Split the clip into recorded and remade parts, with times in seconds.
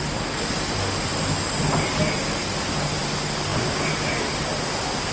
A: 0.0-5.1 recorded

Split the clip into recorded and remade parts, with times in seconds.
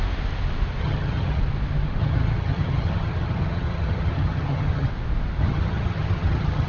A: 0.0-0.8 recorded; 0.8-1.4 remade; 1.4-2.0 recorded; 2.0-4.9 remade; 4.9-5.4 recorded; 5.4-6.7 remade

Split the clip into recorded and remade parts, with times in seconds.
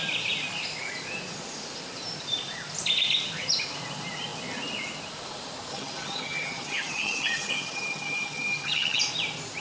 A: 0.0-5.7 recorded; 5.7-9.0 remade; 9.0-9.6 recorded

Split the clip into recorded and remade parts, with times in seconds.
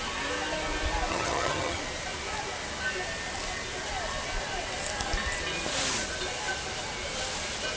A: 0.0-1.1 recorded; 1.1-1.8 remade; 1.8-7.8 recorded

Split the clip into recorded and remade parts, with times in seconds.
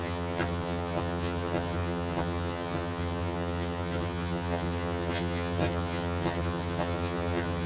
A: 0.0-7.7 remade